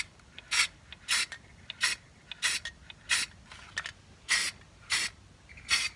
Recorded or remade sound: recorded